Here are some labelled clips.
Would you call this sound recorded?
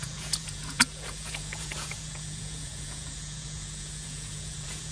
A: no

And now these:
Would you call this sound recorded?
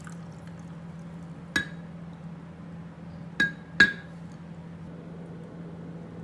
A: yes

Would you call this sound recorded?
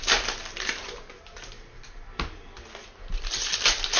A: yes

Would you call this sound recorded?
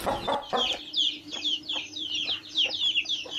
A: yes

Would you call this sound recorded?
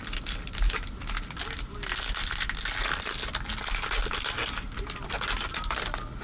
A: yes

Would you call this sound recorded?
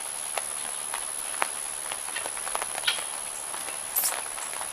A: yes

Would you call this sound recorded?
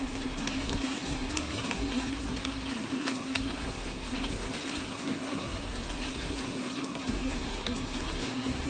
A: no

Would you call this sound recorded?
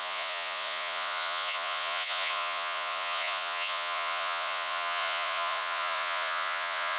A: no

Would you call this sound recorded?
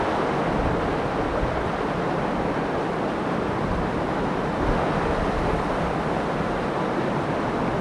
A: yes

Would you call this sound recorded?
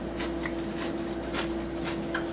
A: yes